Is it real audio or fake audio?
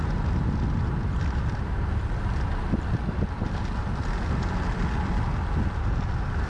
real